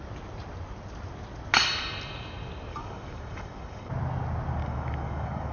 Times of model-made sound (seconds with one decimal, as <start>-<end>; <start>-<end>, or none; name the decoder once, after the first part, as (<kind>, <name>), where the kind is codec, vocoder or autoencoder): 2.7-3.9 (codec, DAC); 4.6-5.5